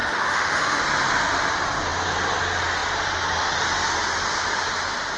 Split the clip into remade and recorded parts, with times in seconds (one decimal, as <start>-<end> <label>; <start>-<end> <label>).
0.0-0.8 remade; 0.8-5.2 recorded